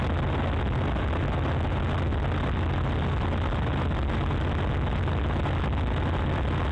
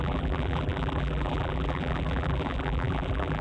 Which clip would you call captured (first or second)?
first